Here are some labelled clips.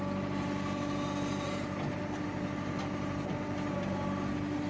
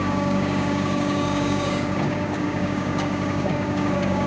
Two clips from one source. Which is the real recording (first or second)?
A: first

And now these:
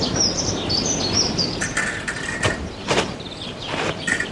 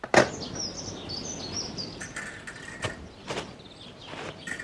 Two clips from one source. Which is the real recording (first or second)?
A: second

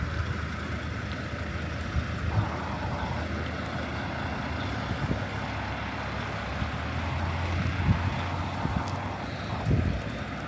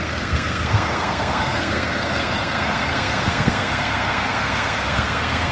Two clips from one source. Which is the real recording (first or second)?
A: first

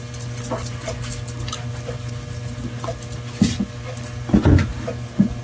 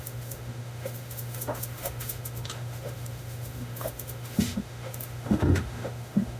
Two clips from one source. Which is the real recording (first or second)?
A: first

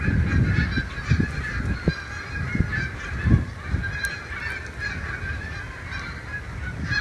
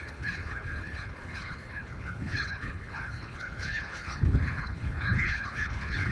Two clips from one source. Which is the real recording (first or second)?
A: first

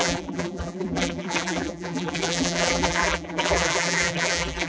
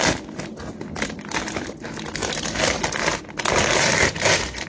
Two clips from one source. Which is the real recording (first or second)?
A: second